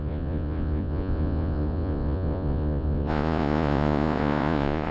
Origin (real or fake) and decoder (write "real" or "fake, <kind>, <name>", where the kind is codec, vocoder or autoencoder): fake, vocoder, Vocos